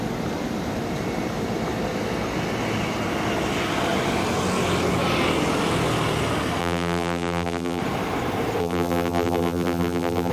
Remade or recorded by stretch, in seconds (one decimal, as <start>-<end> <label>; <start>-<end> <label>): 0.0-6.6 recorded; 6.6-7.8 remade; 7.8-8.6 recorded; 8.6-10.3 remade